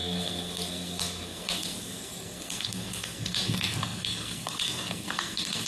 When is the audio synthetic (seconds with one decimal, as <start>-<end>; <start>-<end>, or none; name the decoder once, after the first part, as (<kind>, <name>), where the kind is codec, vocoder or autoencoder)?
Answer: 0.0-5.7 (codec, SNAC)